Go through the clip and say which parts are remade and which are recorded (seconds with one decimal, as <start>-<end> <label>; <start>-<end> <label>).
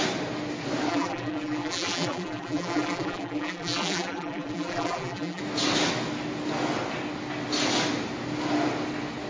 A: 0.0-0.9 recorded; 0.9-5.4 remade; 5.4-9.3 recorded